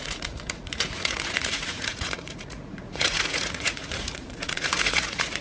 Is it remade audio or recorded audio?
remade